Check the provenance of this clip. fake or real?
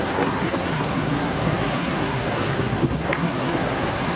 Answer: fake